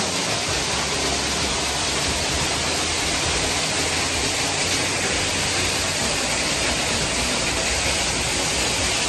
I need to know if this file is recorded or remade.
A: recorded